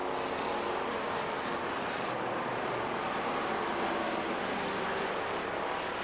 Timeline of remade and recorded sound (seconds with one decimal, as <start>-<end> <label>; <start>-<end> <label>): 0.0-6.0 recorded